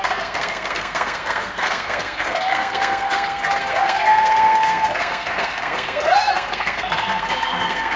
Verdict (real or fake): fake